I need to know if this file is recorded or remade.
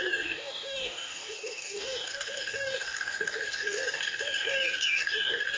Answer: remade